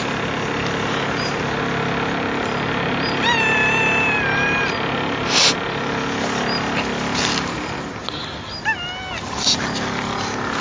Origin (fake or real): real